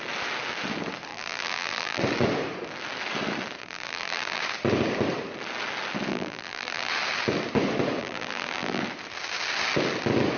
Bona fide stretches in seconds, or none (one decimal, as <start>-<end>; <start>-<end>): 0.0-1.1; 2.0-3.6; 4.4-6.1; 6.9-8.0; 8.8-10.4